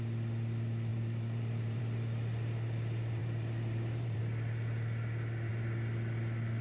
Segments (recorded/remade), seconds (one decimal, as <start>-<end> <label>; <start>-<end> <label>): 0.0-0.9 recorded; 0.9-1.8 remade; 1.8-3.2 recorded; 3.2-4.2 remade; 4.2-6.6 recorded